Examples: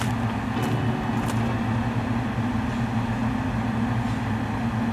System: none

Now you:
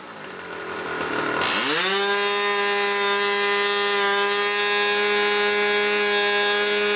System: none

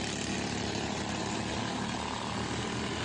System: none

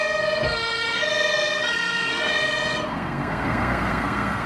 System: codec, SNAC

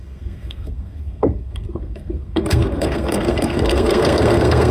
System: codec, SNAC